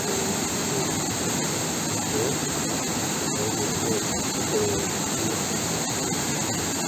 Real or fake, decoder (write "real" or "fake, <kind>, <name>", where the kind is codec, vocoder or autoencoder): real